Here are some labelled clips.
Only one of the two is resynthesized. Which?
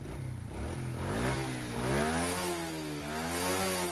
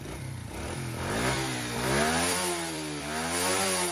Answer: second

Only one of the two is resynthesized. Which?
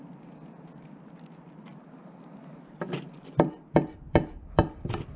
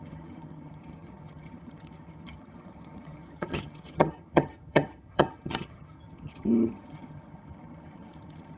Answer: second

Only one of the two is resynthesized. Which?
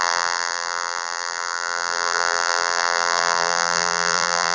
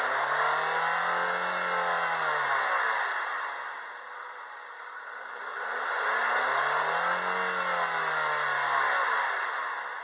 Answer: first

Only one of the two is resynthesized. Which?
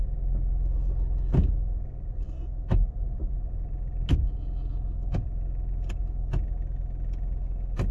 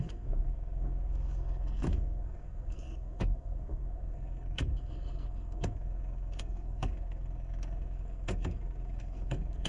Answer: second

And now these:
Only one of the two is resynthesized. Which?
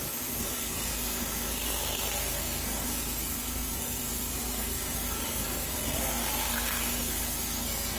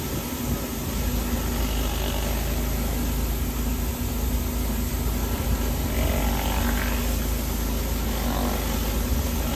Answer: first